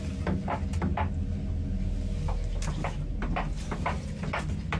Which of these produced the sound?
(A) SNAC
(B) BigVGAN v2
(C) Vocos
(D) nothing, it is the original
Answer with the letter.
D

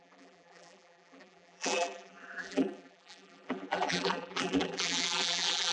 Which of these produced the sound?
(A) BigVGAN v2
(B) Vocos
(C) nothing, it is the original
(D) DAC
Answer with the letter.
A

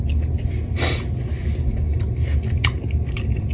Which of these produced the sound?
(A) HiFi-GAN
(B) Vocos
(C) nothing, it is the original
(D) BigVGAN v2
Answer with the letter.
C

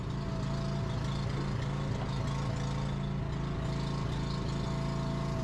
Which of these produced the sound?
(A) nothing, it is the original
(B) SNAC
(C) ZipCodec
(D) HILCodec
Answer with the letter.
A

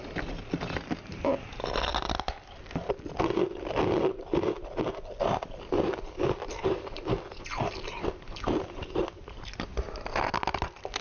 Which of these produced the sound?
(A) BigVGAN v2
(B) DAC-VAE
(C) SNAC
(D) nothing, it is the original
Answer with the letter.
D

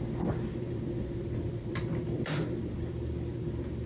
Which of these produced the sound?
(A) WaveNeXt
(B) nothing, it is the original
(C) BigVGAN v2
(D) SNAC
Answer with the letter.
C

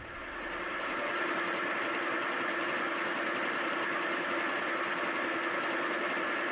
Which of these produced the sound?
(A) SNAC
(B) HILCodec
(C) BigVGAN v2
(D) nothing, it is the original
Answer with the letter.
D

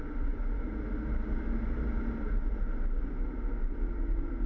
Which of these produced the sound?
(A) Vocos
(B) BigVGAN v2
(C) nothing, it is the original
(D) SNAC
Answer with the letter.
C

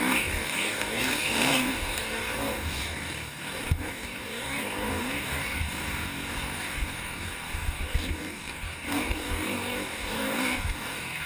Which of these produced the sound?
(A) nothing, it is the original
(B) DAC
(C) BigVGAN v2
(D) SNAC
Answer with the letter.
B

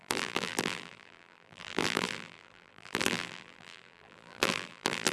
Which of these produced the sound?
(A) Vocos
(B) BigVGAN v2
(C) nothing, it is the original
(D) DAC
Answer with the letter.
B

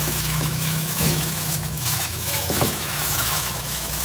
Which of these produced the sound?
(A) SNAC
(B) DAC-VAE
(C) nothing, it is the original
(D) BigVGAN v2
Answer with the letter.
B